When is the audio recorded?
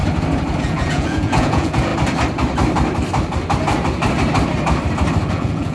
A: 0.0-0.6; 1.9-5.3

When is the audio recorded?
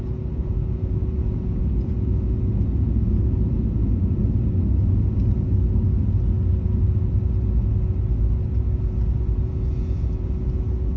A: 4.2-9.4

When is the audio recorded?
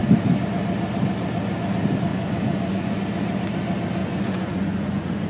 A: 0.0-2.1; 3.0-4.0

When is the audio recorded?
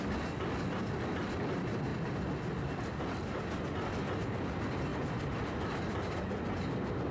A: 0.0-7.1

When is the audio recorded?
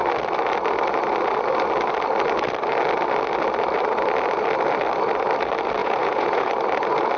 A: 0.0-5.8; 6.5-7.2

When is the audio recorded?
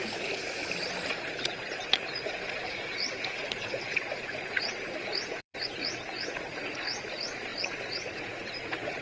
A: 0.6-1.1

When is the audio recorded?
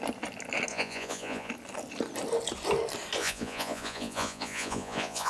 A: 0.0-0.7; 1.5-3.2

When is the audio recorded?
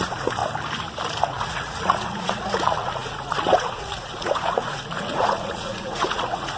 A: 0.4-1.3